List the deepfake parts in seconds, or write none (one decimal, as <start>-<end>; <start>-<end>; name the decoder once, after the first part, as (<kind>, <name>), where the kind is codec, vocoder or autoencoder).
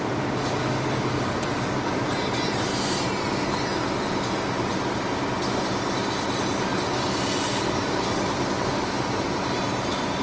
0.4-1.9 (codec, DAC); 7.5-8.3